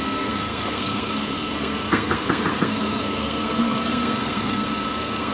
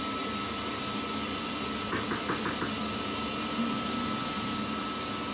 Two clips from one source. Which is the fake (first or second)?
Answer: first